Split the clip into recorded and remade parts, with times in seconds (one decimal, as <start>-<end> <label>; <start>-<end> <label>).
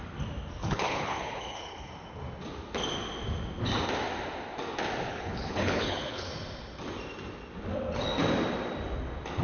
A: 0.0-0.6 recorded; 0.6-1.9 remade; 1.9-5.1 recorded; 5.1-6.3 remade; 6.3-9.4 recorded